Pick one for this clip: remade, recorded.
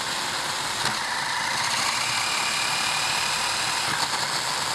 recorded